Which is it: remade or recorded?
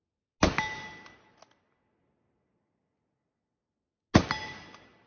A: recorded